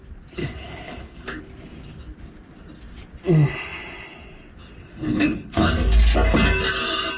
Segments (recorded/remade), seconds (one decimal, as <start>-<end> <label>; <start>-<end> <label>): 0.0-0.4 recorded; 0.4-1.4 remade; 1.4-4.8 recorded; 4.8-5.7 remade; 5.7-7.2 recorded